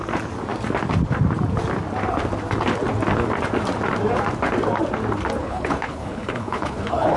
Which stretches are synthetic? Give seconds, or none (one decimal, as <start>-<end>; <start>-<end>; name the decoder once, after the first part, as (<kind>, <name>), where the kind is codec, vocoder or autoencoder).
5.4-7.2 (codec, HILCodec)